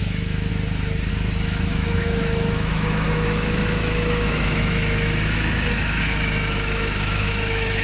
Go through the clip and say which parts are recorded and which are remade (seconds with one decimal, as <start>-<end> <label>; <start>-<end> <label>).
0.0-0.5 remade; 0.5-1.1 recorded; 1.1-7.8 remade

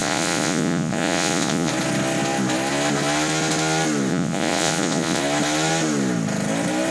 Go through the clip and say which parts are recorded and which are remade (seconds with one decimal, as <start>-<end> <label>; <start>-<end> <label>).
0.0-1.7 remade; 1.7-4.1 recorded; 4.1-5.2 remade; 5.2-6.9 recorded

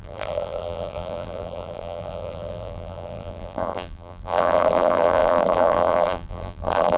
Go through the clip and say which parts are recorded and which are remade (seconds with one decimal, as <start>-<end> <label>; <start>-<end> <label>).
0.0-7.0 remade

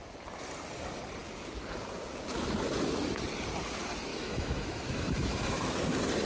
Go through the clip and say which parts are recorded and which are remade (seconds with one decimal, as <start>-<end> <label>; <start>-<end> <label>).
0.0-4.1 recorded; 4.1-5.7 remade; 5.7-6.3 recorded